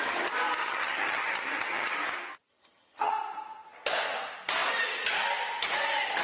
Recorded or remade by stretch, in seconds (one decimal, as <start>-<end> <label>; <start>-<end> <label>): 0.0-0.6 recorded; 0.6-1.9 remade; 1.9-2.5 recorded; 2.5-3.1 remade; 3.1-6.2 recorded